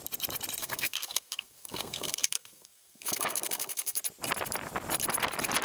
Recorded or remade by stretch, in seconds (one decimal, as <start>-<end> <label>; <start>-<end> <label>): 0.0-0.6 recorded; 0.6-4.0 remade; 4.0-5.6 recorded